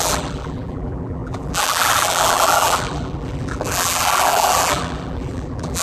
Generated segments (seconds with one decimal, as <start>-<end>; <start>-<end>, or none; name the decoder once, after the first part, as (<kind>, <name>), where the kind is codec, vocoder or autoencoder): 0.0-5.8 (vocoder, BigVGAN v2)